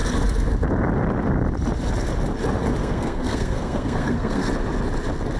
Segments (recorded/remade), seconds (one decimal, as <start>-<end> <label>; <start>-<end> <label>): 0.0-2.8 recorded; 2.8-4.5 remade; 4.5-5.4 recorded